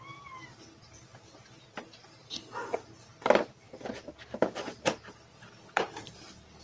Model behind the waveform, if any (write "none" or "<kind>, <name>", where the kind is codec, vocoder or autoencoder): none